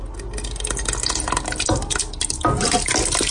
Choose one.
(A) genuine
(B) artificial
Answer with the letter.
A